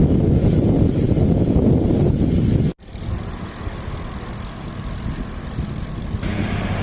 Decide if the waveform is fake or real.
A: real